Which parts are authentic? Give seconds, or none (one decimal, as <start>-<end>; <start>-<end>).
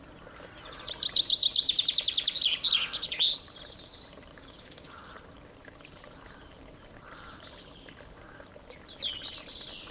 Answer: 0.0-4.3; 5.1-9.9